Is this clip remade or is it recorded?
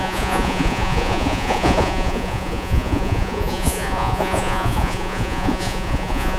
remade